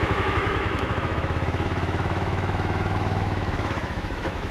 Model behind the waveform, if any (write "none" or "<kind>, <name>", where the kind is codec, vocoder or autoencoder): autoencoder, DAC-VAE